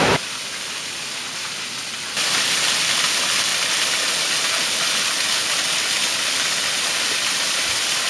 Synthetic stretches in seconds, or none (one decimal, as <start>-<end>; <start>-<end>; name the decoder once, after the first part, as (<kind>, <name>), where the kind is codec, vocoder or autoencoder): none